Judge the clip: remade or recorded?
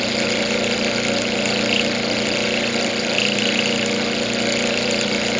recorded